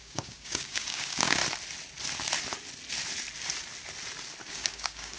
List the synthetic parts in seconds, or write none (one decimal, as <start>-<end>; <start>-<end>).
0.0-1.4; 4.5-5.2

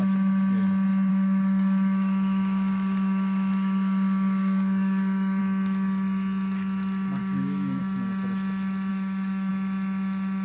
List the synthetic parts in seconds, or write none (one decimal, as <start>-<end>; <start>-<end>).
1.1-5.4; 7.2-7.8; 8.9-9.5

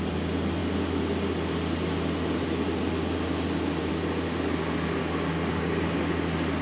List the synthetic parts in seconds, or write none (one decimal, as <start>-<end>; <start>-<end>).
5.0-6.0

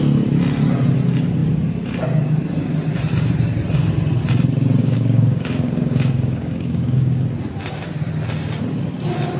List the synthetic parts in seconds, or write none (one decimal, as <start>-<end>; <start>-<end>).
4.8-7.2